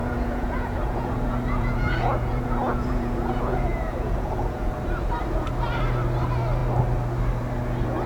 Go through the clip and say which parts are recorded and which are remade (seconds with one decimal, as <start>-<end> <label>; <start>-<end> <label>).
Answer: 0.0-4.7 remade; 4.7-8.1 recorded